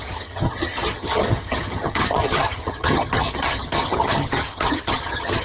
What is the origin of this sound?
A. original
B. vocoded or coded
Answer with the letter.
B